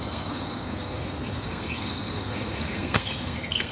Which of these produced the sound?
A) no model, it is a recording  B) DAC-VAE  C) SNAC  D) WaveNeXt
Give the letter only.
C